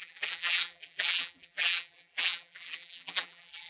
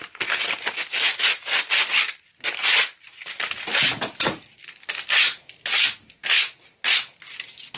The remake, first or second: first